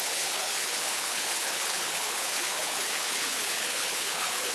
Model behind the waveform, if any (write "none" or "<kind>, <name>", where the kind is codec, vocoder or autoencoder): codec, HILCodec